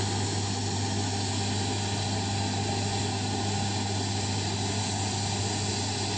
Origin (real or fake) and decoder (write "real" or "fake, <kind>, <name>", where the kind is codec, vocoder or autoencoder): real